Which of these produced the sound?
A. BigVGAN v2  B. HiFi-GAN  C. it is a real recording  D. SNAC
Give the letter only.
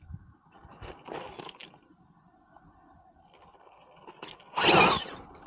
C